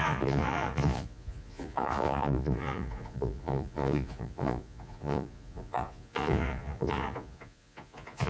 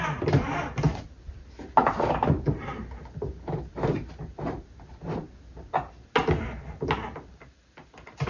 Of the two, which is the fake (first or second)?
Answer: first